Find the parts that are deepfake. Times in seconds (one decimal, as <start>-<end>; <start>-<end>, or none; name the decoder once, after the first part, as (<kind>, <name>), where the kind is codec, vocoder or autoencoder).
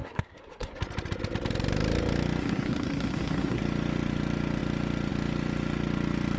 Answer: 0.0-0.8 (codec, SNAC); 2.4-3.6